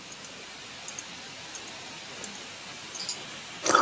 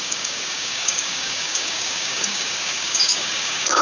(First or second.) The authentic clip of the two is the first